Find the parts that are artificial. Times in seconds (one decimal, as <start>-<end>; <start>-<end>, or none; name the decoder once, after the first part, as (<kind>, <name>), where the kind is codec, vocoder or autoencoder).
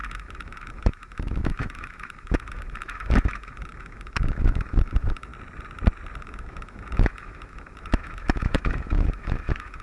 0.0-5.3 (autoencoder, DAC-VAE); 6.2-9.8